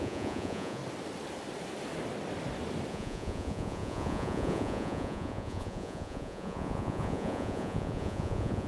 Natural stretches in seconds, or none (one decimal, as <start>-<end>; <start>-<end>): 0.8-2.9